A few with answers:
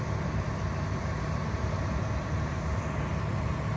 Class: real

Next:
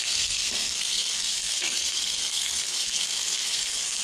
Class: fake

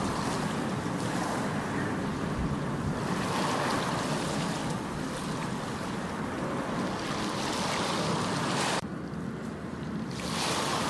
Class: real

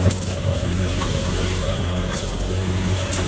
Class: fake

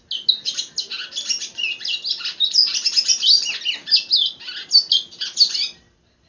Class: real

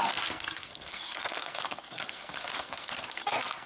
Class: fake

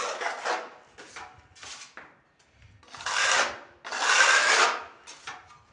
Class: real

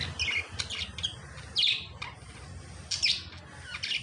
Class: real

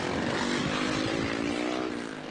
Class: real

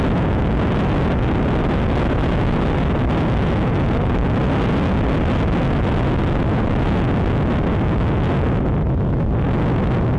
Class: real